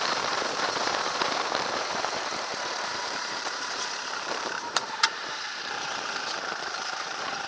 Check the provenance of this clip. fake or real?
fake